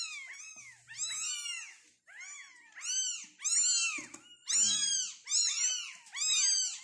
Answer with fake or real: real